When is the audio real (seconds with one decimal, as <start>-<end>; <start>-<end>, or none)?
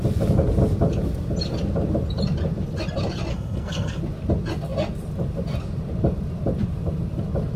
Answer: 0.0-3.3; 4.0-7.6